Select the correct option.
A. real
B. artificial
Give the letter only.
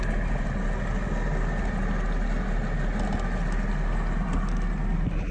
A